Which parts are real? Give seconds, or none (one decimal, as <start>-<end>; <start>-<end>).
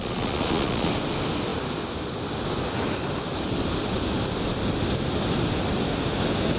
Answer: 0.9-6.6